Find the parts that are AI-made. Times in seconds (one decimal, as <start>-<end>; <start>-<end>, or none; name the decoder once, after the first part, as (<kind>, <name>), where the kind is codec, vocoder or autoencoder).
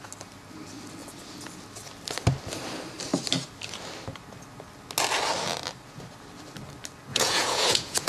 7.1-8.1 (vocoder, Vocos)